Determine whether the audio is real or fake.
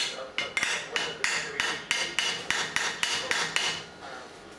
real